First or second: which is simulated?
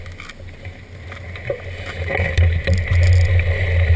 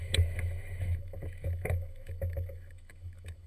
second